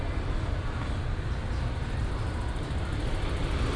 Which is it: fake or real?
real